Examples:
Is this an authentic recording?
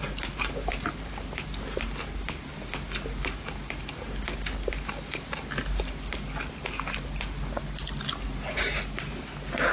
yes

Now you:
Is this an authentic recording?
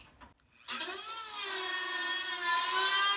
yes